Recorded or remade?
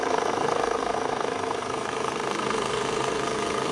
remade